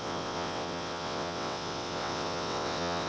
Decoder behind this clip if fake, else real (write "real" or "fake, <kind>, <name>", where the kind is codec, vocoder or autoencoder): fake, vocoder, WaveNeXt